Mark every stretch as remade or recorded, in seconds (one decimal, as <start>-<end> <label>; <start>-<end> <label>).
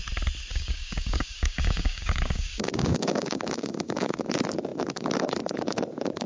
0.0-0.5 recorded; 0.5-4.3 remade; 4.3-6.3 recorded